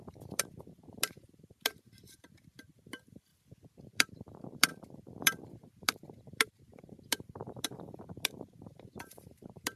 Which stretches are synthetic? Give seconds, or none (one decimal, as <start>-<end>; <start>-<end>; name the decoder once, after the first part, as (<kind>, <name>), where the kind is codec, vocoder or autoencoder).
0.0-3.3 (vocoder, BigVGAN v2); 3.8-9.8